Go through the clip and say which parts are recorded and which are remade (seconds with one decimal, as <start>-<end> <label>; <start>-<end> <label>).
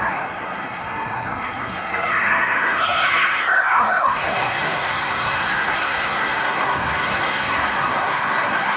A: 0.0-8.8 remade